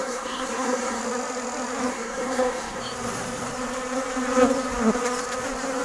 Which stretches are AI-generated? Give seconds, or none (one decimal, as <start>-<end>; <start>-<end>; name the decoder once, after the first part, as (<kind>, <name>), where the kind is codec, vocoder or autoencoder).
0.0-1.0 (codec, SNAC); 1.9-2.8